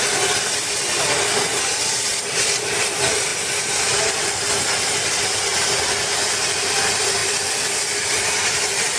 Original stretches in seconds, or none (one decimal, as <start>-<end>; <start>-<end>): 0.0-7.2